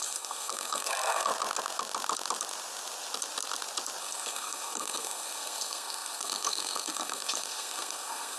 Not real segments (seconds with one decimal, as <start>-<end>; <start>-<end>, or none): 0.0-1.3; 4.0-8.4